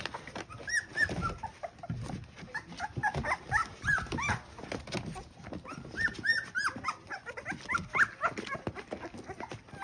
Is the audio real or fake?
real